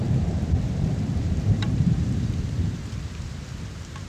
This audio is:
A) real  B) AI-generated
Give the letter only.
B